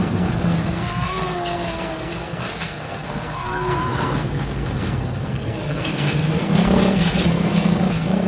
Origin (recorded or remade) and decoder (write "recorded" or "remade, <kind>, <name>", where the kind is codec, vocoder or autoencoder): remade, codec, SNAC